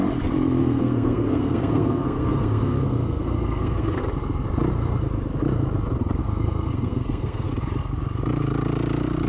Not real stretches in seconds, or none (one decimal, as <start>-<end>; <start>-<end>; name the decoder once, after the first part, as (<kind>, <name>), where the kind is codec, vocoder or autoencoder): 0.6-4.0 (codec, SNAC); 6.2-7.5